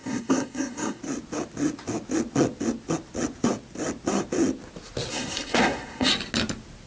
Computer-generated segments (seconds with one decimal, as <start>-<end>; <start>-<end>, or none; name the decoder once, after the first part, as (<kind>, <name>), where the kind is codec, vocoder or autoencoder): 0.0-1.0 (codec, SNAC); 5.1-6.1